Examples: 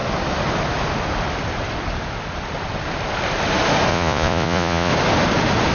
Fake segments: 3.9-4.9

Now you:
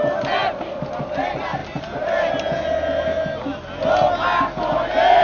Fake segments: none

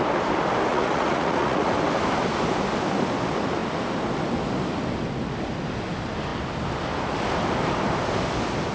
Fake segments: 0.7-1.7

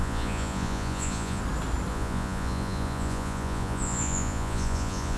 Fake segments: 0.0-1.4; 1.9-5.2

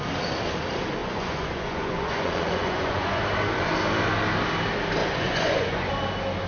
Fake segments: 1.0-3.2; 5.0-5.9

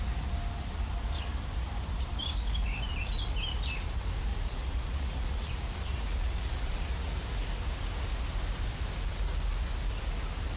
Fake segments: 4.3-7.1

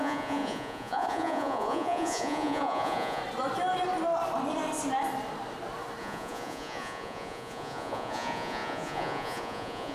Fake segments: 0.0-3.2; 6.0-9.9

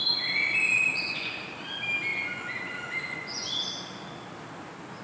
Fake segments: 0.9-1.4; 2.1-3.6